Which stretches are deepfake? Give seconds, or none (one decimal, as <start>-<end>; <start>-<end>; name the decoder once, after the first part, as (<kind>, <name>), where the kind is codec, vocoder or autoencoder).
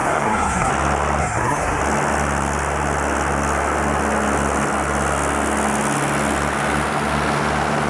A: 0.0-0.7 (codec, SNAC); 1.2-1.8